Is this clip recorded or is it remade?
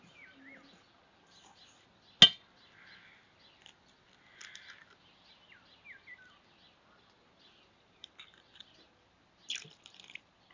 recorded